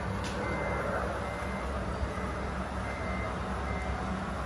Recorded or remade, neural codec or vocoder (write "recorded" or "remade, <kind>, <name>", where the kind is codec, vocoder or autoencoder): recorded